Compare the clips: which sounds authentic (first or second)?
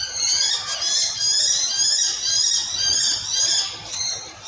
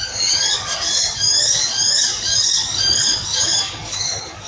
first